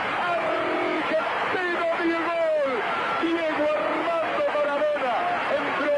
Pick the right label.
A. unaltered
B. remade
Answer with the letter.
A